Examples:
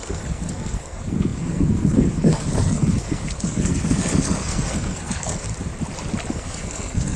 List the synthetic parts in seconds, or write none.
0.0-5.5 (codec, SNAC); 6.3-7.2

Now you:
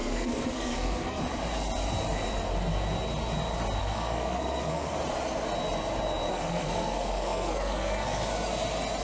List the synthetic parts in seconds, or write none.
0.0-1.2 (codec, SNAC); 3.8-5.0; 6.3-8.2

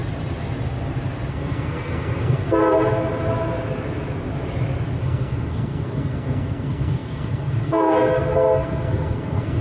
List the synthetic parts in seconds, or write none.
1.3-2.6 (codec, SNAC); 5.0-9.6

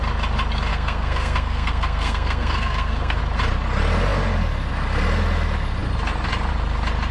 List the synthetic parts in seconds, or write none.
0.7-3.2 (codec, SNAC)

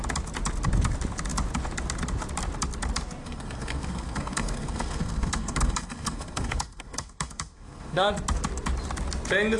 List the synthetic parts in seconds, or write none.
3.2-8.1 (codec, SNAC)

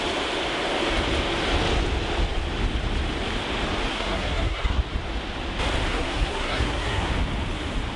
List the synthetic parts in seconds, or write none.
3.9-4.8 (codec, SNAC); 5.9-7.1